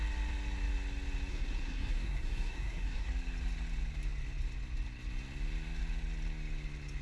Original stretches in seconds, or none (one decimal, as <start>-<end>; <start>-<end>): 0.0-1.3; 3.1-7.0